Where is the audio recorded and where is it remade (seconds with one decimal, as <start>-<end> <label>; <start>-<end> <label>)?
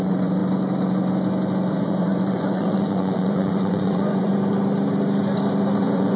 0.0-0.4 remade; 0.4-1.7 recorded; 1.7-4.3 remade; 4.3-5.8 recorded; 5.8-6.2 remade